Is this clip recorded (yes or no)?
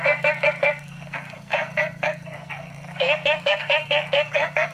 no